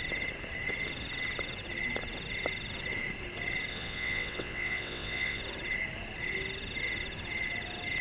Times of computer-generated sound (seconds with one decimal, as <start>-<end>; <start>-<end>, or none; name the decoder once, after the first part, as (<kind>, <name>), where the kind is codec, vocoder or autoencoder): 3.7-5.4 (vocoder, WaveNeXt)